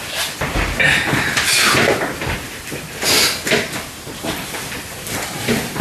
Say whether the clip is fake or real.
real